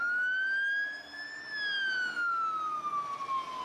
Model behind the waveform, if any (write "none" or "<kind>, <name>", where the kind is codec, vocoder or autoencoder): none